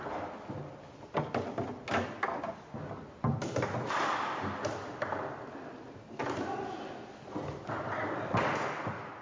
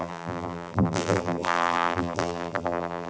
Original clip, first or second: first